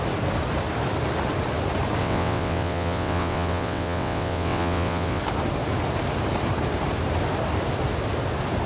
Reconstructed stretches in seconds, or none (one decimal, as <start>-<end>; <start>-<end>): 2.0-5.2

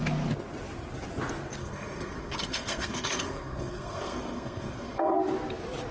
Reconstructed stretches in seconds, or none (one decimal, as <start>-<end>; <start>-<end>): 1.6-5.1

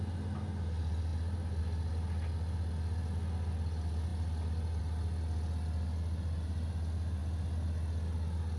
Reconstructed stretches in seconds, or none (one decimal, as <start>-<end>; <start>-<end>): none

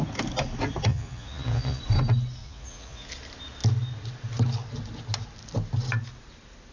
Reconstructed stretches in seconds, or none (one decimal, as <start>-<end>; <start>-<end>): 0.9-1.8; 2.4-3.1